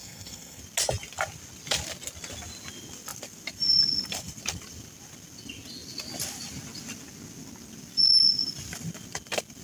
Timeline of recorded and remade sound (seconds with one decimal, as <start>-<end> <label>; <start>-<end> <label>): 0.0-0.6 remade; 0.6-9.6 recorded